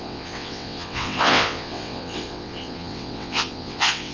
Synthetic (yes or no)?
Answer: yes